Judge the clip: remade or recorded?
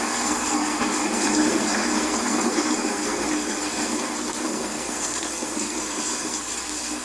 remade